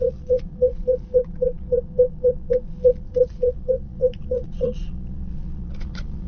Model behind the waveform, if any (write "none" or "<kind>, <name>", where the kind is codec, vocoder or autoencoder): vocoder, Vocos